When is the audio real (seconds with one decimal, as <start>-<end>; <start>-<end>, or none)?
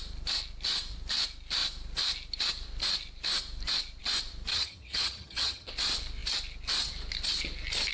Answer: 0.0-4.5; 5.7-7.9